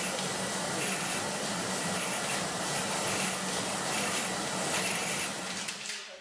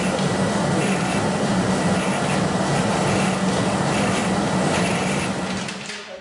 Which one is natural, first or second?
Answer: second